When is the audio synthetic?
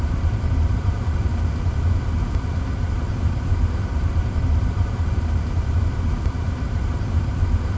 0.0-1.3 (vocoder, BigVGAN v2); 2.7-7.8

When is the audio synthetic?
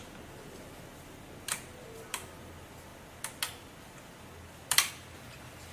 none